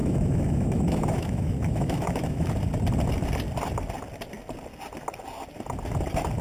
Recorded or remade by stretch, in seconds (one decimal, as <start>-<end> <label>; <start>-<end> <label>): 0.0-2.5 remade; 2.5-6.4 recorded